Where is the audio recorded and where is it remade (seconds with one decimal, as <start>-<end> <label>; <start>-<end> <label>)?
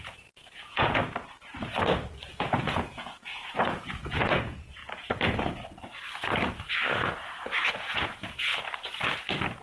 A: 0.0-1.0 remade; 1.0-2.3 recorded; 2.3-4.8 remade; 4.8-7.7 recorded; 7.7-8.5 remade; 8.5-9.6 recorded